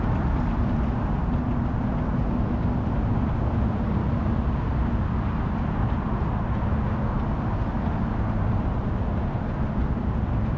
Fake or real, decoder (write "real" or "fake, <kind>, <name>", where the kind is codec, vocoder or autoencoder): real